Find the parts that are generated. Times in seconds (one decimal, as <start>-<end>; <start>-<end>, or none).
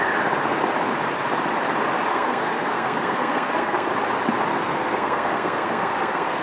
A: 2.1-3.9; 4.5-6.4